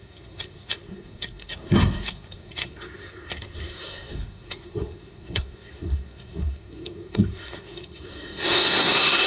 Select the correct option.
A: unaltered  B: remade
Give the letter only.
B